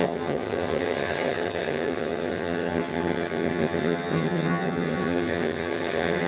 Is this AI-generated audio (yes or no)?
yes